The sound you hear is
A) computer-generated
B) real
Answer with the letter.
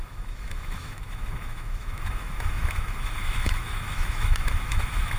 A